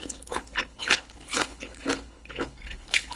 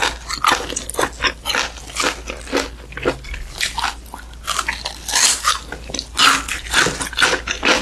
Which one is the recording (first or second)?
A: second